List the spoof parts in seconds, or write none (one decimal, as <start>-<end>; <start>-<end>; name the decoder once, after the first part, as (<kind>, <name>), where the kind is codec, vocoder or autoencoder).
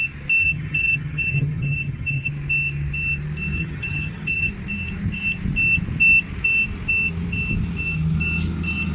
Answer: 0.4-2.3 (vocoder, HiFi-GAN); 3.6-4.5